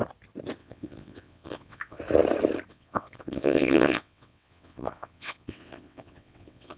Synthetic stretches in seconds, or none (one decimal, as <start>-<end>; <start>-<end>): 0.6-2.0; 2.7-6.8